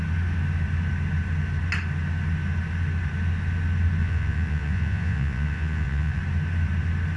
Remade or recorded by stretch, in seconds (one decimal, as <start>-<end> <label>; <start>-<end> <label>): 0.0-4.0 recorded; 4.0-6.2 remade; 6.2-7.2 recorded